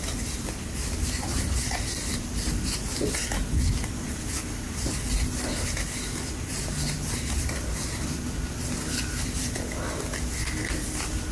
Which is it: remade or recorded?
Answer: recorded